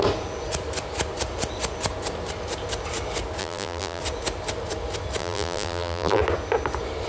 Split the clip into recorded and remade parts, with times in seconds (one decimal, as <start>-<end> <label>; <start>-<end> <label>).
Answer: 0.0-3.4 recorded; 3.4-4.0 remade; 4.0-5.2 recorded; 5.2-6.2 remade; 6.2-7.1 recorded